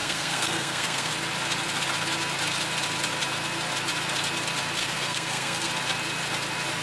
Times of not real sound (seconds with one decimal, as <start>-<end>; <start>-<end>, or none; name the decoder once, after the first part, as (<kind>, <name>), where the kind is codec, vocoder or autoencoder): 0.0-1.1 (codec, SNAC); 4.8-5.7

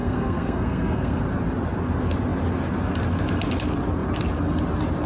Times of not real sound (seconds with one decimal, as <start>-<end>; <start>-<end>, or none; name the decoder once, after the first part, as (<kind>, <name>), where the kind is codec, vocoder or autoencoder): 0.0-1.2 (codec, SNAC)

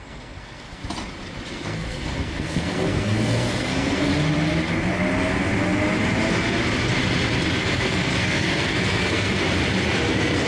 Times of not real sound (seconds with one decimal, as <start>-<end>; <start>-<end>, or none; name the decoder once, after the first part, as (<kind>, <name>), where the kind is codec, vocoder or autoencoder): 0.0-0.8 (codec, SNAC); 1.5-4.1; 7.5-9.4; 10.1-10.5